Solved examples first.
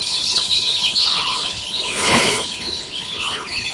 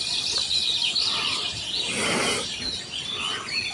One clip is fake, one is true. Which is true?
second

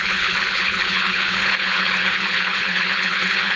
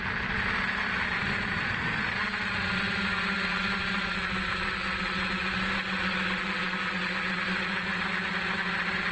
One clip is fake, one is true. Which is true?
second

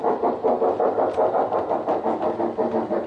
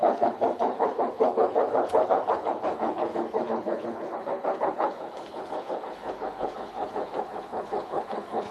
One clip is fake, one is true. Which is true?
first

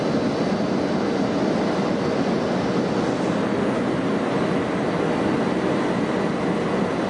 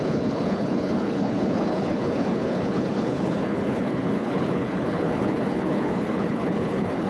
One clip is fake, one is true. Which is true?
first